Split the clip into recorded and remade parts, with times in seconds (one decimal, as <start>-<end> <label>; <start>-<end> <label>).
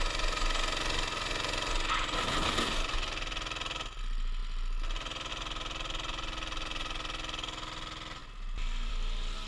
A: 0.0-9.5 recorded